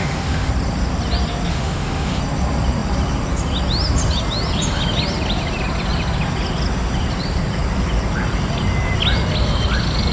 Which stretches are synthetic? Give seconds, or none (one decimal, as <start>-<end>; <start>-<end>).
0.0-0.5; 1.5-2.2